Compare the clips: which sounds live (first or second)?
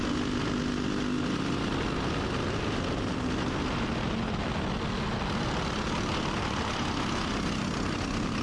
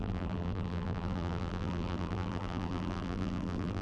first